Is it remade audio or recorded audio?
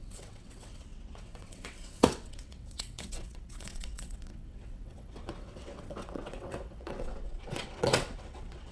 remade